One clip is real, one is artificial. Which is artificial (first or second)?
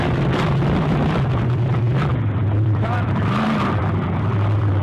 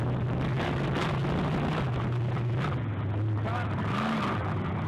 first